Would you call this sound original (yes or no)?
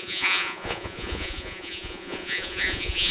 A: no